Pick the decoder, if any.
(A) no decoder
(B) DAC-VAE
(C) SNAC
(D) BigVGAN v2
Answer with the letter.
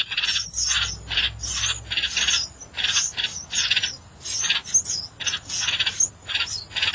A